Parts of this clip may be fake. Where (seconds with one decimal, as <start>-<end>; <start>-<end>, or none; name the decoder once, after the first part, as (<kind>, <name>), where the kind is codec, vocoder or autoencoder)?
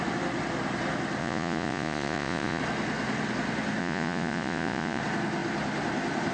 1.2-2.6 (vocoder, Vocos); 3.8-5.0